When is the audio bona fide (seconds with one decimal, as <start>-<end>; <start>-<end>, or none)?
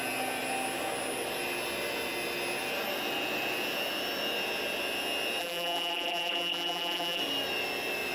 0.0-5.4; 7.2-8.1